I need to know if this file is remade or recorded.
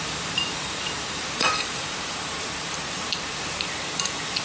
remade